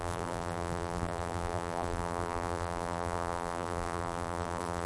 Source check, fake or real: fake